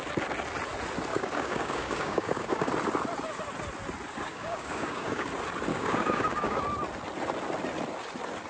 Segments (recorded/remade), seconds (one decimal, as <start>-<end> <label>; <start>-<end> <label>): 0.0-1.1 recorded; 1.1-2.7 remade; 2.7-4.3 recorded; 4.3-5.3 remade; 5.3-5.7 recorded; 5.7-6.6 remade; 6.6-8.5 recorded

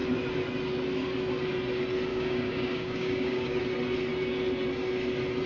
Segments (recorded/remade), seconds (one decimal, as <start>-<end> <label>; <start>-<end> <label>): 0.0-2.1 recorded; 2.1-3.6 remade; 3.6-5.5 recorded